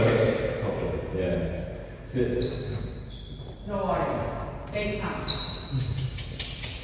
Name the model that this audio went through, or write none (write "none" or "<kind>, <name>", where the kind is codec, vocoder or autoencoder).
none